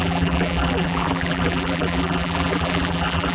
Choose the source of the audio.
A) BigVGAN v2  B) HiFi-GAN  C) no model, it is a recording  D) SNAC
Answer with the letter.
A